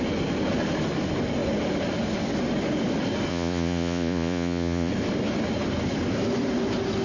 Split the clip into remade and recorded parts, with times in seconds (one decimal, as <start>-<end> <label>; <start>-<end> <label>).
0.0-3.3 recorded; 3.3-4.9 remade; 4.9-7.0 recorded